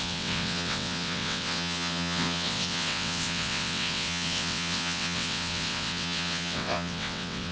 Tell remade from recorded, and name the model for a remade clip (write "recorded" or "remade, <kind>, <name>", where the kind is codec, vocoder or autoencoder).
remade, vocoder, WaveNeXt